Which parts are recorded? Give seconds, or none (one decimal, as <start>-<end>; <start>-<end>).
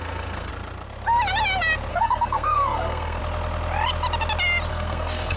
0.5-1.9; 3.2-4.7